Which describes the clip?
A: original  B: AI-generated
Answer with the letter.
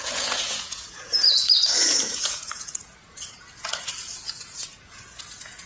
B